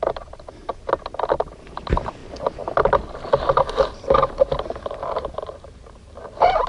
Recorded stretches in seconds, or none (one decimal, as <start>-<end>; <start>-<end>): 0.7-1.7; 2.2-3.8